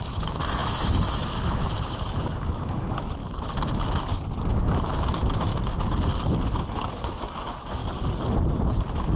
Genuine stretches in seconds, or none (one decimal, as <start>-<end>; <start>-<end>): 3.2-4.6; 5.5-6.5; 7.8-8.7